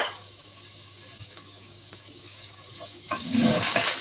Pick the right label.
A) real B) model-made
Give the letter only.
B